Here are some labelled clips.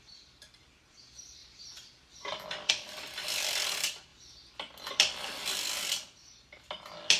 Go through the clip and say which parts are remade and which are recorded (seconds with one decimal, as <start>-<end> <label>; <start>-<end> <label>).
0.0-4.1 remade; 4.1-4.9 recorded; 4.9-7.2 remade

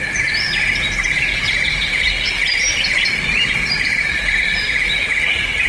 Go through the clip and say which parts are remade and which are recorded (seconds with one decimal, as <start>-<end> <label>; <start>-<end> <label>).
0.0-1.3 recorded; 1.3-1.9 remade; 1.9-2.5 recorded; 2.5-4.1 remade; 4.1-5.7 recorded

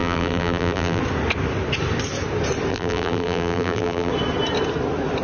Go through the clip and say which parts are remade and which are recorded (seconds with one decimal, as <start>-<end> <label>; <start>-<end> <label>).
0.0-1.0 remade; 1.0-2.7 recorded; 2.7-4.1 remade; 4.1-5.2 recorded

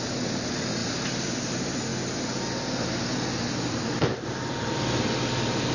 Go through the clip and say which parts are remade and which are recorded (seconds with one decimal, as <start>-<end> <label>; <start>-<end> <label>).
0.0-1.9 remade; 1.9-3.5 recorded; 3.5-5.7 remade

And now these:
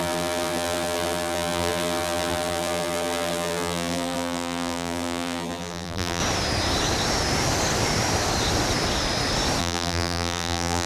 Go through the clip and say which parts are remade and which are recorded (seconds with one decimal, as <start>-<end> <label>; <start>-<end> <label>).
0.0-6.2 remade; 6.2-9.6 recorded; 9.6-10.9 remade

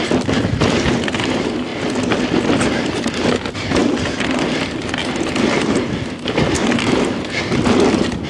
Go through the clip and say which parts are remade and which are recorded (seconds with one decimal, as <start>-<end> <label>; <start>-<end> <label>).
0.0-6.6 recorded; 6.6-7.9 remade; 7.9-8.3 recorded

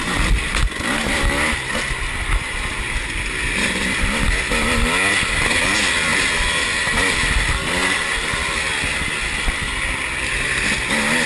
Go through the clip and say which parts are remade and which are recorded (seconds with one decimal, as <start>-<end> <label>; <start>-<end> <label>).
0.0-11.3 recorded